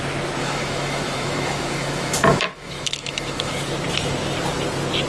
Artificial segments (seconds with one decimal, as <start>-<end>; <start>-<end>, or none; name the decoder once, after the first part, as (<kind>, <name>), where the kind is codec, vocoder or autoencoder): 0.4-3.5 (autoencoder, DAC-VAE)

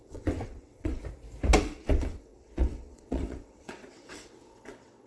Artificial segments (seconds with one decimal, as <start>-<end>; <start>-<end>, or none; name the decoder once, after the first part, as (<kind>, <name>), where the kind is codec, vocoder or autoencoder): 0.0-1.0 (vocoder, WaveNeXt); 1.6-5.1

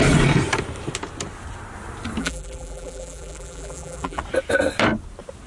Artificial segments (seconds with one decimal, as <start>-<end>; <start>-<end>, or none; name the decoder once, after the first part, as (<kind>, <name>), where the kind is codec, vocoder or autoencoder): 2.2-4.2 (vocoder, BigVGAN v2)